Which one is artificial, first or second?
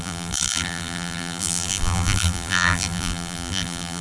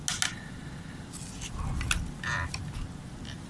first